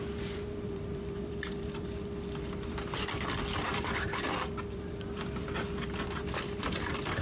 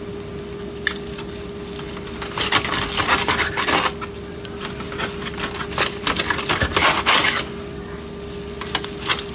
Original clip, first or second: second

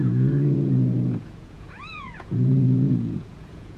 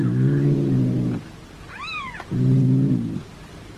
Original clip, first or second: second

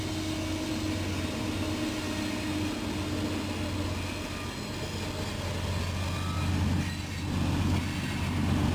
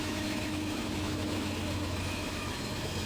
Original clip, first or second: first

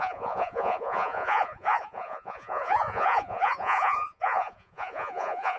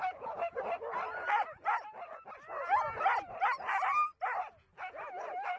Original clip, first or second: second